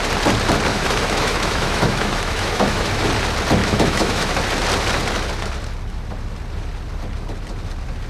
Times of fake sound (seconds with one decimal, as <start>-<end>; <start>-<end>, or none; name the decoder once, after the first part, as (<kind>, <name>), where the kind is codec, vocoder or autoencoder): 0.7-3.0 (autoencoder, DAC-VAE); 3.6-4.3